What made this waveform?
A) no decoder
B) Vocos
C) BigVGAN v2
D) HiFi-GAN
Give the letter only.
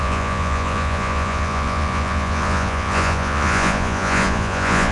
B